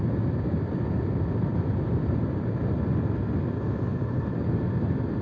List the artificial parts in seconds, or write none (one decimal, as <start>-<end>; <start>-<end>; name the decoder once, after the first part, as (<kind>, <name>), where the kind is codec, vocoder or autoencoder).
1.5-2.5 (vocoder, BigVGAN v2); 3.9-4.5